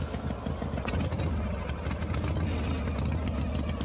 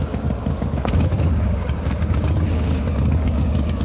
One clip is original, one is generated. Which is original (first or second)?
first